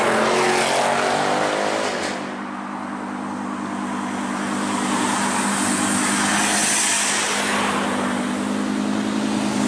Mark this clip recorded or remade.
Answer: recorded